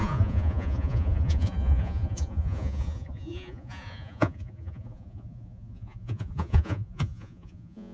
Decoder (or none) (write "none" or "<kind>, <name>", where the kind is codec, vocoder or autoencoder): vocoder, Vocos